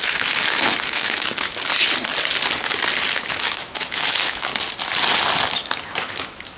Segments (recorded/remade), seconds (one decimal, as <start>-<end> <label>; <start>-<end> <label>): 0.0-1.7 remade; 1.7-3.3 recorded; 3.3-4.5 remade; 4.5-6.0 recorded; 6.0-6.6 remade